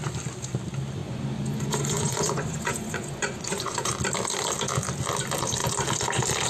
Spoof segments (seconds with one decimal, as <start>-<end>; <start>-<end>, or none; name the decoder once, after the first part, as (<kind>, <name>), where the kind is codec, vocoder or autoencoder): 1.0-3.9 (vocoder, Vocos)